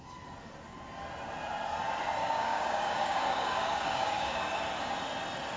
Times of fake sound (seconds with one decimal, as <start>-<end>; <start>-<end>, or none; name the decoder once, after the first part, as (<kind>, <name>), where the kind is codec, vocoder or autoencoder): 2.2-4.4 (codec, DAC)